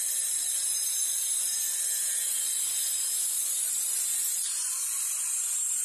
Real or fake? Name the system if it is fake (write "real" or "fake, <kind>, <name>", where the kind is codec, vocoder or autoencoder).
fake, vocoder, BigVGAN v2